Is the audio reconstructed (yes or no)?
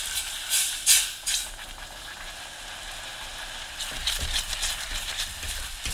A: no